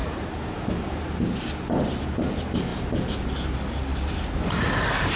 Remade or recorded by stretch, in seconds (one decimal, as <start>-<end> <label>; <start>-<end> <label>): 0.0-1.2 remade; 1.2-2.7 recorded; 2.7-3.3 remade; 3.3-5.2 recorded